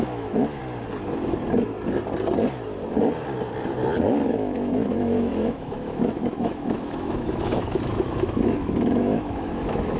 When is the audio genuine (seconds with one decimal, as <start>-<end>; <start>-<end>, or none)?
0.6-4.3